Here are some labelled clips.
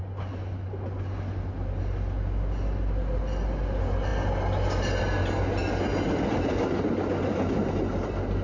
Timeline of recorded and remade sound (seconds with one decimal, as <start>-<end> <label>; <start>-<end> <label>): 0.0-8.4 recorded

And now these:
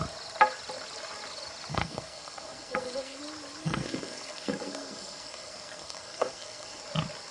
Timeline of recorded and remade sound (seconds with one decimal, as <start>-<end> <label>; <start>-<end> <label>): 0.0-1.7 recorded; 1.7-3.2 remade; 3.2-3.6 recorded; 3.6-6.8 remade; 6.8-7.3 recorded

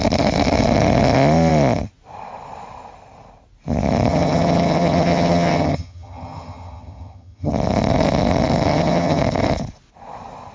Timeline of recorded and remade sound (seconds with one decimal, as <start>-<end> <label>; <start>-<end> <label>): 0.0-4.1 recorded; 4.1-7.5 remade; 7.5-8.7 recorded; 8.7-9.2 remade; 9.2-10.5 recorded

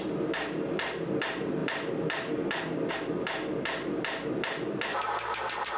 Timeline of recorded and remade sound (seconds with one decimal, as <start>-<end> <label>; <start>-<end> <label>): 0.0-4.9 recorded; 4.9-5.8 remade